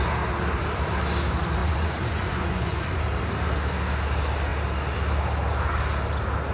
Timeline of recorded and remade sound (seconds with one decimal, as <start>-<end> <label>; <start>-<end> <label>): 0.0-1.6 recorded; 1.6-3.0 remade; 3.0-6.5 recorded